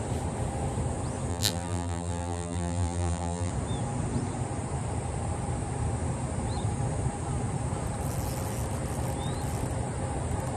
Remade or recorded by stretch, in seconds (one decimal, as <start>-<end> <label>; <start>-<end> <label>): 0.0-1.3 recorded; 1.3-3.5 remade; 3.5-10.6 recorded